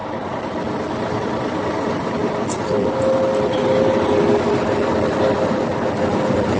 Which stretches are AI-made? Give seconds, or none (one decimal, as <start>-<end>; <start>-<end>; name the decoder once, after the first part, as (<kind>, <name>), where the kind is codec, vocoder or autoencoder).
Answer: none